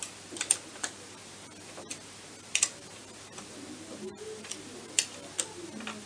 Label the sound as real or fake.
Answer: real